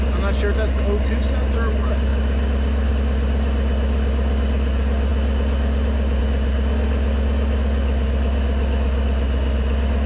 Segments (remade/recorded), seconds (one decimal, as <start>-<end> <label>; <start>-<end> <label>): 0.0-10.1 recorded